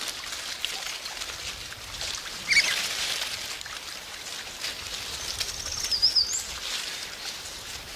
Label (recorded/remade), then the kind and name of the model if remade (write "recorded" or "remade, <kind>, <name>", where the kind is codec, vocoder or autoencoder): recorded